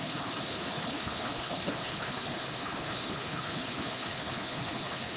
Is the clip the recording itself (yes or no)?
no